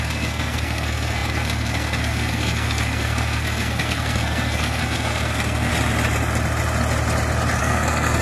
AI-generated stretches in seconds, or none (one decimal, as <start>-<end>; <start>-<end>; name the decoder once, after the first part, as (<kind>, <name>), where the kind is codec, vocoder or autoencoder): 0.0-5.7 (codec, SNAC); 7.6-8.2